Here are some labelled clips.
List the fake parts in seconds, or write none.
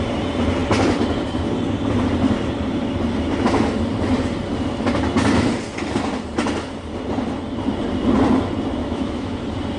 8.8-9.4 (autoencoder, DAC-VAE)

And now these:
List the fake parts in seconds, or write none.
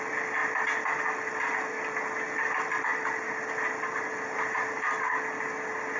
none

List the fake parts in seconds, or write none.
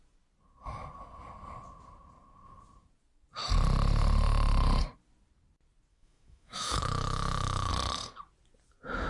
5.9-7.7 (autoencoder, DAC-VAE)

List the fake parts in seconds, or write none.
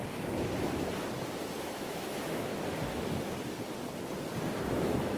1.6-2.5 (autoencoder, DAC-VAE); 4.6-5.2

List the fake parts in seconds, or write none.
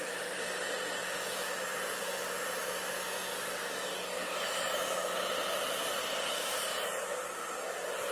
4.2-5.2 (autoencoder, DAC-VAE)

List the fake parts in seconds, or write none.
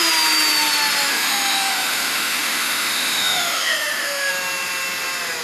1.1-4.3 (autoencoder, DAC-VAE)